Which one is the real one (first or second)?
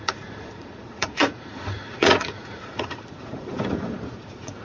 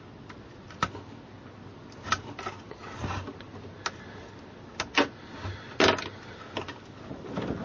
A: second